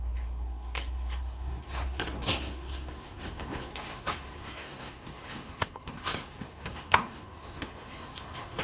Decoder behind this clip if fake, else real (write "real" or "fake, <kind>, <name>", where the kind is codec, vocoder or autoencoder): fake, codec, SNAC